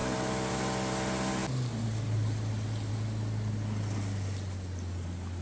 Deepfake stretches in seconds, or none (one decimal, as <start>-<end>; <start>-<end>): none